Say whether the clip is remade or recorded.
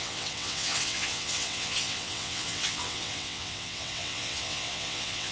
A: remade